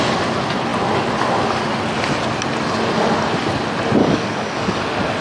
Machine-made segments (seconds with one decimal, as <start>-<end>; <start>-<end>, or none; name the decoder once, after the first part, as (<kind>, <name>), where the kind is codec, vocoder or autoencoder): 4.0-4.8 (codec, DAC)